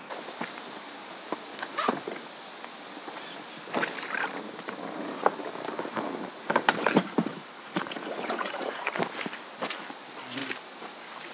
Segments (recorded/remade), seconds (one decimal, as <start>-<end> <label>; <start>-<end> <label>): 0.0-1.5 recorded; 1.5-2.3 remade; 2.3-7.3 recorded; 7.3-8.9 remade; 8.9-11.3 recorded